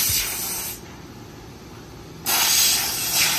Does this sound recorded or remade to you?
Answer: recorded